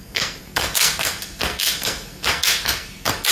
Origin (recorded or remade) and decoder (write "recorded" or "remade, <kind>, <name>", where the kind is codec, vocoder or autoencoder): remade, codec, SNAC